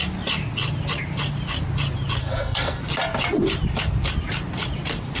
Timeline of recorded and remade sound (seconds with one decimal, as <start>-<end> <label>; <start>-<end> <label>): 0.0-2.2 recorded; 2.2-2.8 remade; 2.8-5.2 recorded